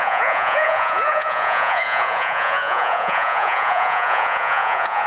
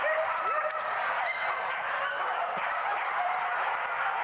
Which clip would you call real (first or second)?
second